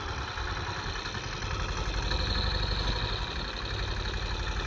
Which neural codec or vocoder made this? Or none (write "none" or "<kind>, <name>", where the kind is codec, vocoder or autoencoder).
none